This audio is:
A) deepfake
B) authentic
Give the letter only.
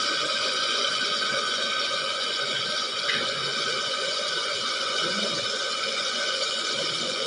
A